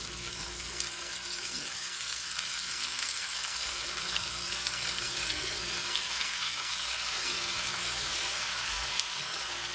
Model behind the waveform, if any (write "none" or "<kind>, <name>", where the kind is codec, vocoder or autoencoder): codec, SNAC